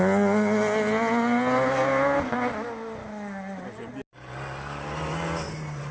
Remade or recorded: recorded